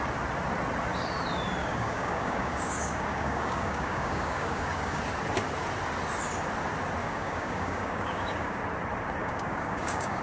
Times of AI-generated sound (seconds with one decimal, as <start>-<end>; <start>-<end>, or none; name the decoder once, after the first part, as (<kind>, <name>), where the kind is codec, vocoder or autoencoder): 1.6-5.0 (codec, DAC); 7.0-8.6; 9.2-10.2